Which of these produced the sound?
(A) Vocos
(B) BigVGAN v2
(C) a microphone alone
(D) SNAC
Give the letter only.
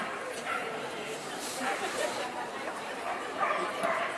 B